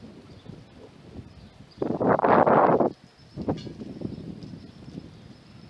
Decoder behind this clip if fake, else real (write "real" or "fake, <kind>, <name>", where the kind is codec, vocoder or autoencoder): real